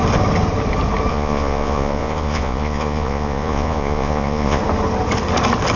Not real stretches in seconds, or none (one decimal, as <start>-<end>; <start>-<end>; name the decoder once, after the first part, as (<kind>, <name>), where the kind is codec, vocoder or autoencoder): 1.1-4.6 (vocoder, Vocos)

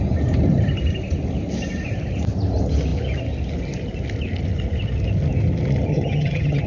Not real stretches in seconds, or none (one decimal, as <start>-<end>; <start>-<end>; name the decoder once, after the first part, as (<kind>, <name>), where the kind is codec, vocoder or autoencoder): 5.9-6.7 (vocoder, HiFi-GAN)